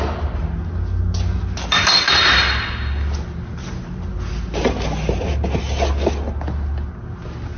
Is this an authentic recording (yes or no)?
yes